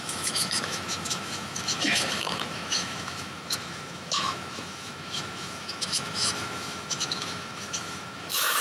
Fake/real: fake